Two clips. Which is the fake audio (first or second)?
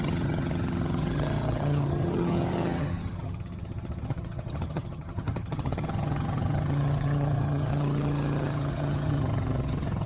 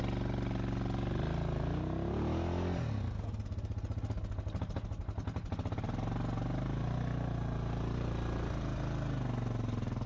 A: first